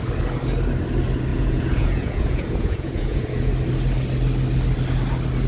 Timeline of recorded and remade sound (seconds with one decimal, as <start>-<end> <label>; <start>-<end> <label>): 0.0-1.3 recorded; 1.3-3.5 remade; 3.5-5.5 recorded

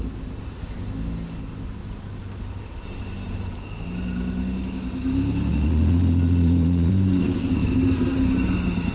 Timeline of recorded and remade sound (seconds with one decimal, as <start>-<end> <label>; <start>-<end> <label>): 0.0-5.5 recorded; 5.5-6.9 remade; 6.9-8.9 recorded